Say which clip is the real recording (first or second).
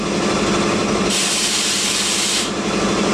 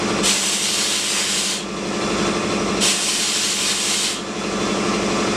second